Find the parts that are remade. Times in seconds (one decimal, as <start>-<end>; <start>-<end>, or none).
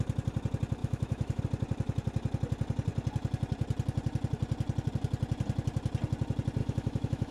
0.8-1.4; 6.6-7.3